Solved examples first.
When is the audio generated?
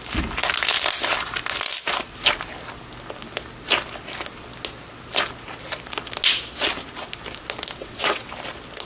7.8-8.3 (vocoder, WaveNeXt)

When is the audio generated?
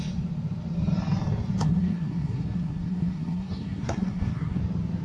1.6-4.6 (codec, SNAC)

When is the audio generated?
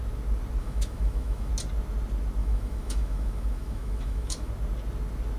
0.6-1.5 (autoencoder, DAC-VAE); 2.4-4.5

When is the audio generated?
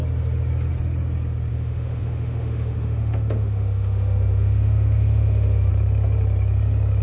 1.5-5.7 (autoencoder, DAC-VAE)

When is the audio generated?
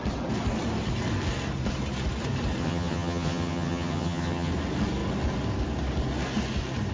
2.6-4.5 (vocoder, HiFi-GAN)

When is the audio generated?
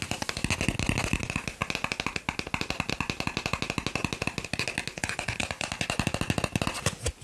4.9-5.7 (vocoder, Vocos)